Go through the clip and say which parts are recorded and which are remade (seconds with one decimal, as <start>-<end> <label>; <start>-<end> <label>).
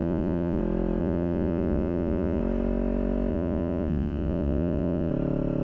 0.0-0.6 remade; 0.6-1.0 recorded; 1.0-2.4 remade; 2.4-3.3 recorded; 3.3-5.1 remade; 5.1-5.6 recorded